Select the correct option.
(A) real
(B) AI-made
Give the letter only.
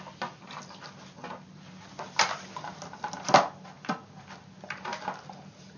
A